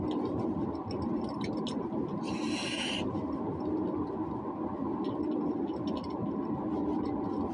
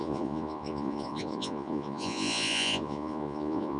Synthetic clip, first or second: second